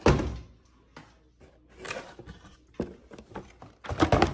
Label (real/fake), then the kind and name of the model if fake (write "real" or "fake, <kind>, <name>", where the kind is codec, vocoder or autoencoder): real